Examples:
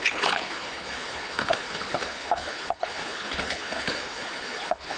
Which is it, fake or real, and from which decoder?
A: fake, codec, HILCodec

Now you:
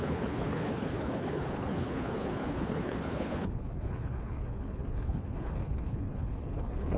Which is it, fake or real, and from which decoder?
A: fake, codec, HILCodec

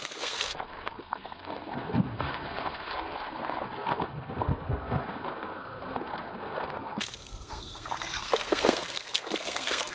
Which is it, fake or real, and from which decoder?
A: fake, codec, SNAC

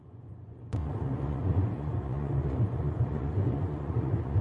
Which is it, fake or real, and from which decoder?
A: fake, vocoder, Vocos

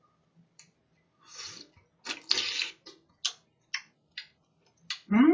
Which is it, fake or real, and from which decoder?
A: real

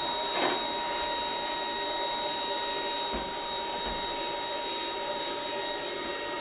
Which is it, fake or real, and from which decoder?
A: real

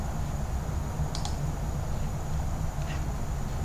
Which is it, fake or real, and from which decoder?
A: real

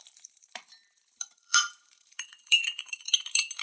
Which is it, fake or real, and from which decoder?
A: fake, vocoder, BigVGAN v2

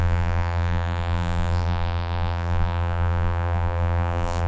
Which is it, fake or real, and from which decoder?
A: fake, vocoder, BigVGAN v2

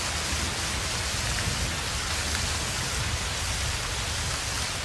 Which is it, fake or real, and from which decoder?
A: real